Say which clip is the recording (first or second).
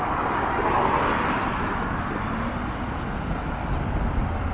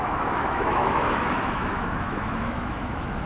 first